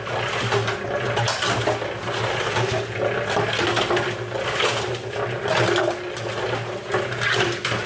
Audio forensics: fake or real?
real